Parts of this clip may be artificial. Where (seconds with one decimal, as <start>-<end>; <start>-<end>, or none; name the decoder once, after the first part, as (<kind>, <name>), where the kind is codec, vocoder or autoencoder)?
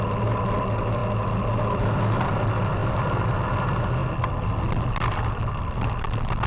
none